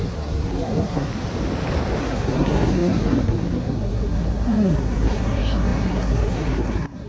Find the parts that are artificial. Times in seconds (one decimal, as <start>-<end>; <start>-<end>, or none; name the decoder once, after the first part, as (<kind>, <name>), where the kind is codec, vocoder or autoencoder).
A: 0.0-1.1 (codec, SNAC); 2.0-7.1